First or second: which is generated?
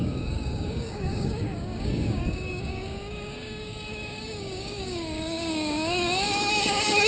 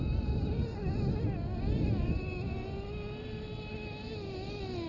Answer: first